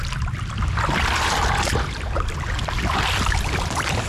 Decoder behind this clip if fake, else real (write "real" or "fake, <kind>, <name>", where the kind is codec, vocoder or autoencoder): real